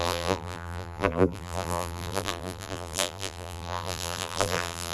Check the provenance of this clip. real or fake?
fake